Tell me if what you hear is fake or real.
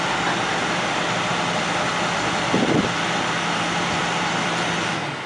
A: real